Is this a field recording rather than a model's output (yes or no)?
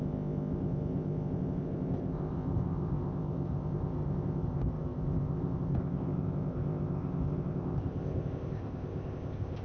no